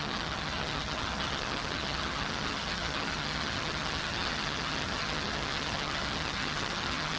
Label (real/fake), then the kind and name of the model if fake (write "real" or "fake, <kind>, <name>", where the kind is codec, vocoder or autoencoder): fake, vocoder, HiFi-GAN